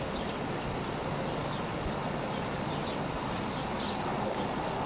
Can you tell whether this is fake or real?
real